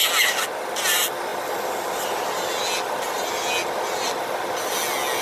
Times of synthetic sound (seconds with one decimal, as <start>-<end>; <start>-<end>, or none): none